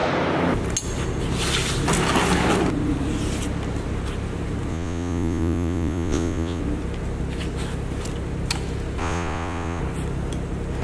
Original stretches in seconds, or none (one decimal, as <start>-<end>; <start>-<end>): 0.0-4.7; 6.6-9.0; 9.8-10.8